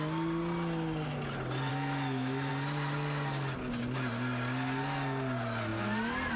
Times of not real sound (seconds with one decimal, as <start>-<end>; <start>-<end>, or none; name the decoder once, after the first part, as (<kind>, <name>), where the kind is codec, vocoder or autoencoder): 1.7-2.5 (autoencoder, DAC-VAE)

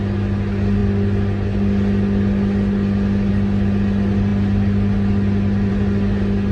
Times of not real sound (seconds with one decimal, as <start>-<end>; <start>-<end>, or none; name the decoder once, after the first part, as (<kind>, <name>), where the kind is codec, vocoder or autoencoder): none

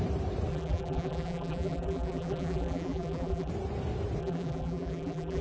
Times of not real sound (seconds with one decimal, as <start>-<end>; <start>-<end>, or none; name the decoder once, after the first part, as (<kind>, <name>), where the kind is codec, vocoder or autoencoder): 0.5-3.5 (vocoder, BigVGAN v2); 4.2-5.4

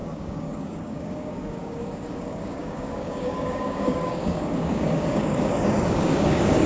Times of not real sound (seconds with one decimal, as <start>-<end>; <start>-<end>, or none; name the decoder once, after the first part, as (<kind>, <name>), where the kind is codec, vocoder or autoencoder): 0.0-6.7 (codec, DAC)

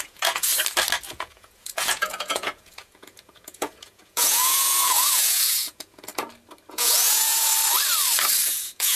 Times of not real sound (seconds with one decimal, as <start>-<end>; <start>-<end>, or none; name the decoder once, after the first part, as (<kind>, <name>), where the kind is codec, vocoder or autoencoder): 0.0-0.5 (vocoder, Vocos); 1.1-6.1; 6.7-7.5; 8.5-9.0

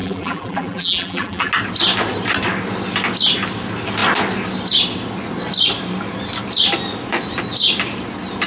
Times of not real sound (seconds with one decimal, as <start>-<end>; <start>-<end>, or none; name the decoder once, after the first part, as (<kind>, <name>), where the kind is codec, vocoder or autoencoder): 0.0-1.5 (vocoder, BigVGAN v2)